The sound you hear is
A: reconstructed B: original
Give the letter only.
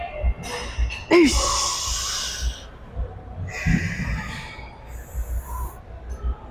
B